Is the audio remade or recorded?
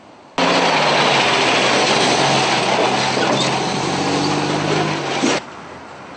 recorded